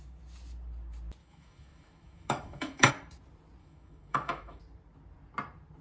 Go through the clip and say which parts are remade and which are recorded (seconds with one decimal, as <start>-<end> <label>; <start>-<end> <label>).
0.0-1.2 recorded; 1.2-2.9 remade; 2.9-3.6 recorded; 3.6-4.6 remade; 4.6-5.8 recorded